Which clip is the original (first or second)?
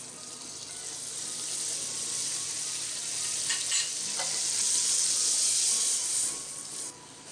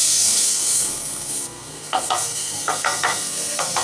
first